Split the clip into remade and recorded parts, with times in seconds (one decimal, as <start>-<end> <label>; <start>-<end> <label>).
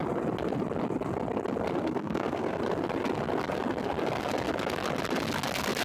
0.0-1.8 recorded; 1.8-2.6 remade; 2.6-5.8 recorded